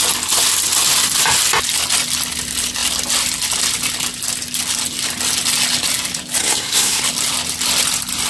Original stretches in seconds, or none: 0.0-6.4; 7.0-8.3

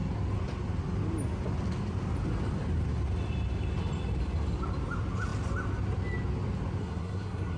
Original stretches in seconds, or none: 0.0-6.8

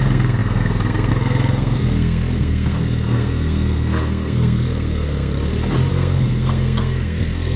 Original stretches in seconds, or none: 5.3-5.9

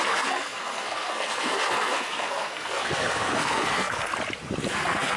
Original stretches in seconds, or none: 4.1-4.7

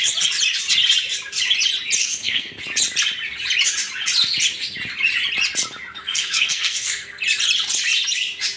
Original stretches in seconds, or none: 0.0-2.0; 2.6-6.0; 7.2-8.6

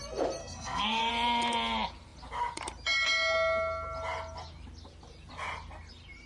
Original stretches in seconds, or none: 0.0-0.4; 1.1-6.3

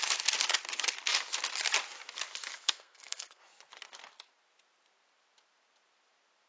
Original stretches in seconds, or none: 0.0-2.5; 3.4-6.5